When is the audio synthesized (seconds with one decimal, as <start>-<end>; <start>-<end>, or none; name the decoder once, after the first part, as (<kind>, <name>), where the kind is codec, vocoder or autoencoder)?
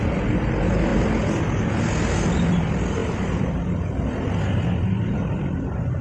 none